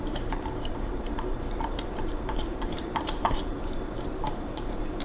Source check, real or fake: fake